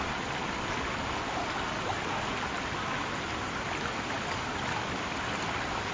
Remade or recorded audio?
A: recorded